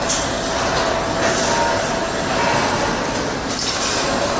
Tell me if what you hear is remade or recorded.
recorded